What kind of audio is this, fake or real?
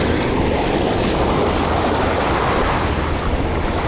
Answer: real